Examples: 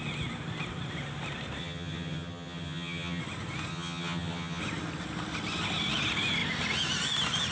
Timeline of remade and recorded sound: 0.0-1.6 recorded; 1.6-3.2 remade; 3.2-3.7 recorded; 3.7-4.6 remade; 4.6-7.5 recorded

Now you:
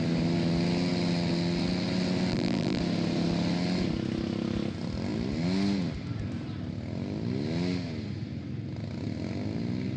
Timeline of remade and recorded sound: 0.0-2.3 recorded; 2.3-2.8 remade; 2.8-10.0 recorded

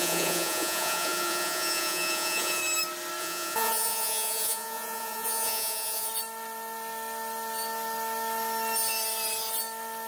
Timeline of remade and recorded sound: 0.0-2.6 remade; 2.6-3.2 recorded; 3.2-6.1 remade; 6.1-10.1 recorded